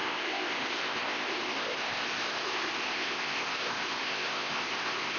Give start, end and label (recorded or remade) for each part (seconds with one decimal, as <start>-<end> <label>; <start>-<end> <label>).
0.0-5.2 remade